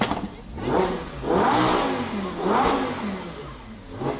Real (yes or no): yes